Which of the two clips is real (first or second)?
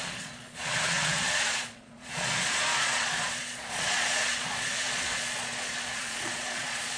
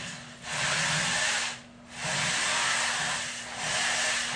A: second